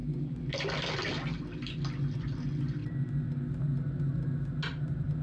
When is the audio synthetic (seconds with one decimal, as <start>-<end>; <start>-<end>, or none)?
none